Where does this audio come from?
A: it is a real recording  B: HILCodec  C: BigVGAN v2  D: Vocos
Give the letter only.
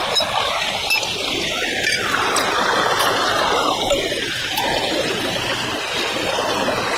A